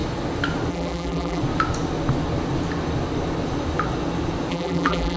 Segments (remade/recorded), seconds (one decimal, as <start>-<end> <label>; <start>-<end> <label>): 0.0-0.7 recorded; 0.7-1.4 remade; 1.4-4.5 recorded; 4.5-5.2 remade